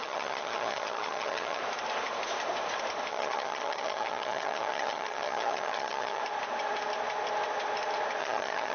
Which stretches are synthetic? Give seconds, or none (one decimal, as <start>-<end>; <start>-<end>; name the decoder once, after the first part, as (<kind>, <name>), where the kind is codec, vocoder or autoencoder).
0.0-1.6 (vocoder, HiFi-GAN); 3.1-6.2; 8.2-8.7